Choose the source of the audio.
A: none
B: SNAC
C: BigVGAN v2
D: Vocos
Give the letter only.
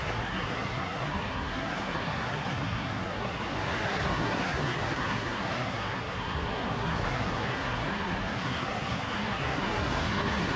B